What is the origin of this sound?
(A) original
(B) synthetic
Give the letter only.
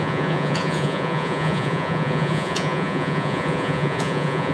B